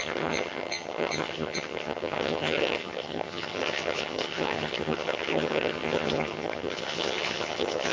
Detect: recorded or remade remade